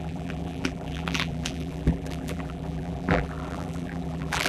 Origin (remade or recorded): remade